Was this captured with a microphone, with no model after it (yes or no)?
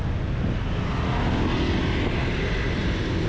yes